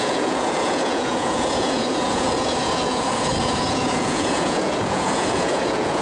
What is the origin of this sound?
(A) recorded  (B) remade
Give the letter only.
B